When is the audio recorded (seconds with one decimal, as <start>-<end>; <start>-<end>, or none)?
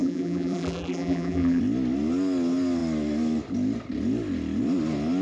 1.6-5.2